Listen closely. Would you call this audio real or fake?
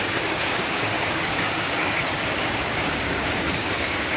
fake